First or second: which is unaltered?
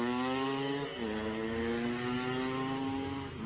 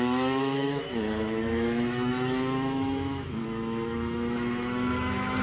first